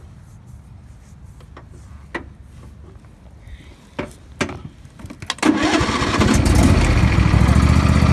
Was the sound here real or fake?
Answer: real